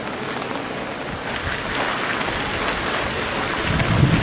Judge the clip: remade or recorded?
recorded